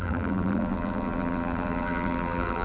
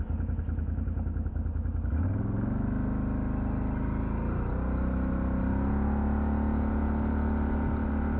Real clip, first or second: second